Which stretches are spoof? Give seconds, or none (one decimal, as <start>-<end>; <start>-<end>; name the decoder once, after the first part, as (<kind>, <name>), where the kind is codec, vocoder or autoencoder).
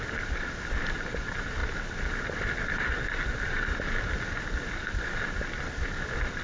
none